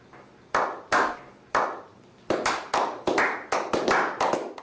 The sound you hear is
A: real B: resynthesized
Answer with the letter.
A